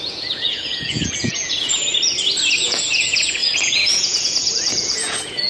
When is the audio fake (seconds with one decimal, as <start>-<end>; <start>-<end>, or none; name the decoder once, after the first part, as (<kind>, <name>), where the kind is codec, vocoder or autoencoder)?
0.0-1.9 (vocoder, Vocos); 2.6-5.5